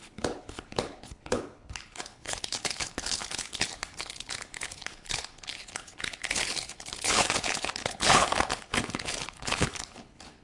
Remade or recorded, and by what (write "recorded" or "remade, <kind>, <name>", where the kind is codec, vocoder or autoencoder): remade, codec, HILCodec